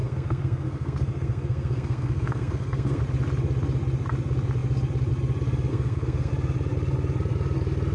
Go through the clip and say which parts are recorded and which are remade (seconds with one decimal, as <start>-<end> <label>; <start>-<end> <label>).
0.0-3.0 remade; 3.0-5.7 recorded; 5.7-6.3 remade; 6.3-7.9 recorded